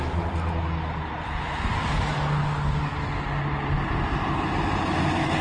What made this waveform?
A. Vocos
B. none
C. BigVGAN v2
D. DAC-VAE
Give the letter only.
B